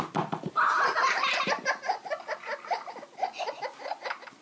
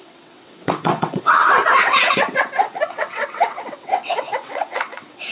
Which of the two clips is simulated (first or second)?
second